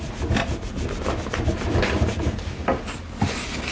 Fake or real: real